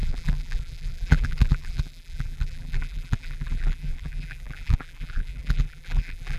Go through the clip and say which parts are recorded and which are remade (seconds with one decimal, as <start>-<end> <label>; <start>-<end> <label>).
0.0-6.4 remade